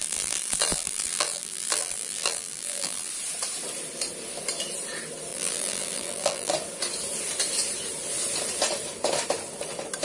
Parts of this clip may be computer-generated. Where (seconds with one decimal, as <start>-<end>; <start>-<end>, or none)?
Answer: 0.0-3.1; 5.3-6.5